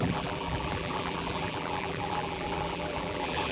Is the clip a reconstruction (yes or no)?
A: yes